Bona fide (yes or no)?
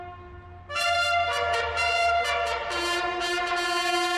yes